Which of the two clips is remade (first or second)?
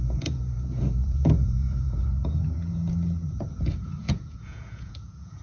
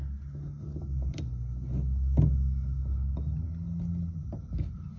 first